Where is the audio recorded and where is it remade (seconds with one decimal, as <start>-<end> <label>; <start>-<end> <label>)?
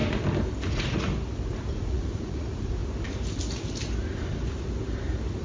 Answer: 0.0-0.7 recorded; 0.7-1.1 remade; 1.1-1.7 recorded; 1.7-2.8 remade; 2.8-5.4 recorded